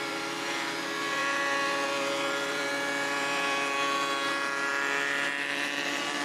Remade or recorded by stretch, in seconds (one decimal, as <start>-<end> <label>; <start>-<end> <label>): 0.0-4.7 remade; 4.7-5.3 recorded; 5.3-6.2 remade